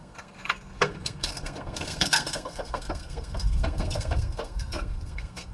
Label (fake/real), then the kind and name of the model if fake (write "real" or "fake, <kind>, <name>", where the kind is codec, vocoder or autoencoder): fake, codec, SNAC